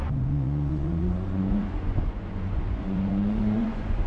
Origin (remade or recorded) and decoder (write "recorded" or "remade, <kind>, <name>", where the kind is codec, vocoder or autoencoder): remade, vocoder, Vocos